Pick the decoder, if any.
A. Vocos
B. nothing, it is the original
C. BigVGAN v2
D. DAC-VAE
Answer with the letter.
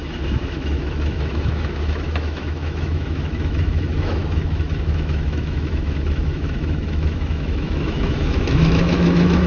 D